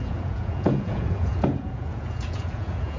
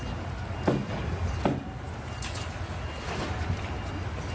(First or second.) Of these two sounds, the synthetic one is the first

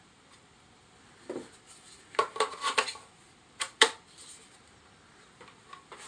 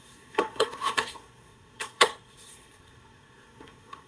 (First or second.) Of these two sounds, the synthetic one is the second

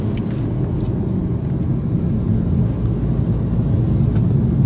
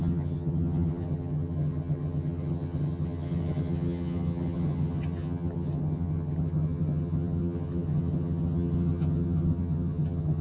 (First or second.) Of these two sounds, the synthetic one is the second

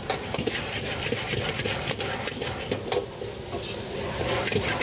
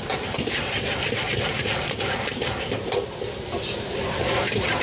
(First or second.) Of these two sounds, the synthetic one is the second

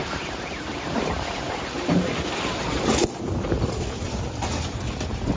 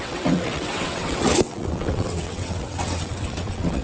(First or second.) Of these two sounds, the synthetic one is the second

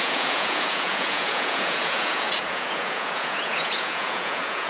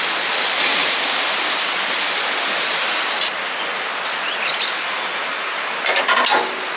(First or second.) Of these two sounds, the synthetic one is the first